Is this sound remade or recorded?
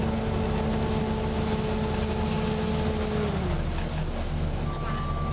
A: recorded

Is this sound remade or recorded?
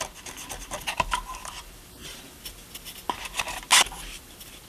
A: recorded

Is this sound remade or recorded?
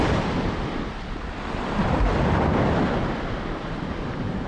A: recorded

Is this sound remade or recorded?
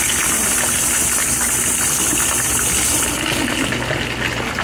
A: recorded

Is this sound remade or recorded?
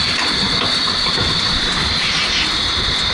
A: recorded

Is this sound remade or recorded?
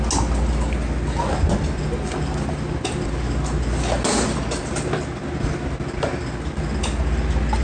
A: recorded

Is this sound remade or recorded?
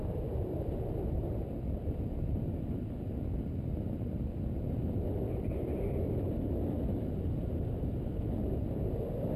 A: recorded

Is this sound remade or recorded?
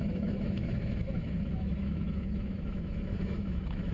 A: remade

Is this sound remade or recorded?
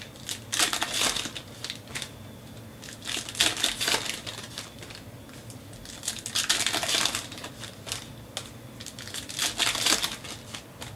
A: recorded